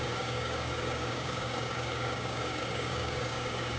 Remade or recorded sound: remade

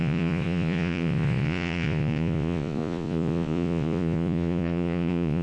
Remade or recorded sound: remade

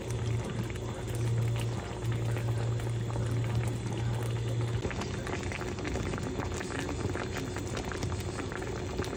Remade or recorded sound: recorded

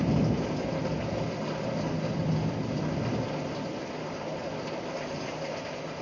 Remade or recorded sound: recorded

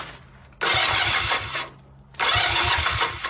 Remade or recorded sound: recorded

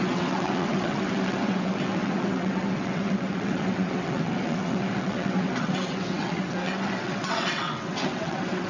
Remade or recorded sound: remade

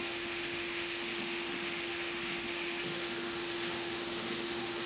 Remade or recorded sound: remade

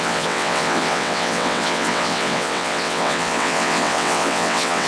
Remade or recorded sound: remade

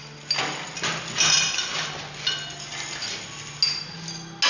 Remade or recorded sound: recorded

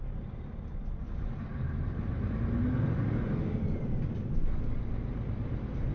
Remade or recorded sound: recorded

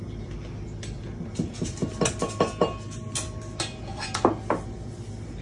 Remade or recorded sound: recorded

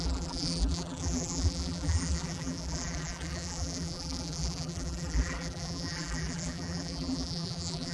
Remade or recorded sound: remade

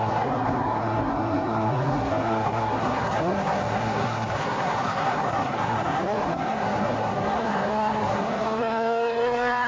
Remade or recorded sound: remade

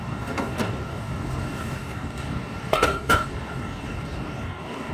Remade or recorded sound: remade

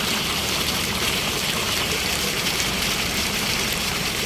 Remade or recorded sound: remade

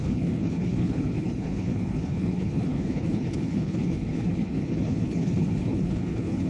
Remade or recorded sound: remade